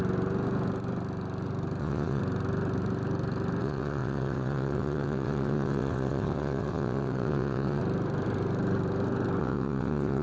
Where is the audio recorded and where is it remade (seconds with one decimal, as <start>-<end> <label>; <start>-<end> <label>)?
0.0-1.8 recorded; 1.8-2.2 remade; 2.2-3.6 recorded; 3.6-7.8 remade; 7.8-9.4 recorded; 9.4-10.2 remade